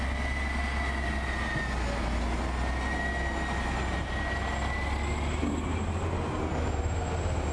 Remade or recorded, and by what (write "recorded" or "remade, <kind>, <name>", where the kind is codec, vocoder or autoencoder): recorded